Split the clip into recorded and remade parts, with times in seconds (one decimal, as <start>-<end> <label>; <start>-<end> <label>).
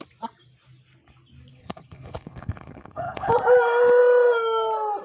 0.0-1.5 recorded; 1.5-3.3 remade; 3.3-5.0 recorded